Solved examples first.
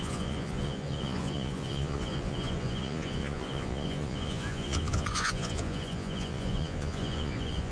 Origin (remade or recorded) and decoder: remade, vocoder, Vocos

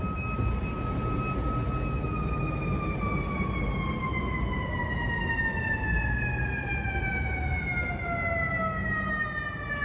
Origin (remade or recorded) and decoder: recorded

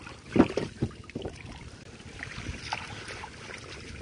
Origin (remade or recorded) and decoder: recorded